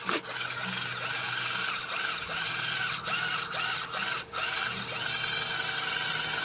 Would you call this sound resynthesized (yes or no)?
no